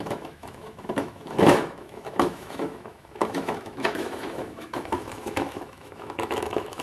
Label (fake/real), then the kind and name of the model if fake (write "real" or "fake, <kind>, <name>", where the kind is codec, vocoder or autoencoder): fake, autoencoder, DAC-VAE